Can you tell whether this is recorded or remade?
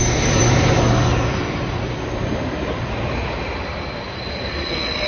remade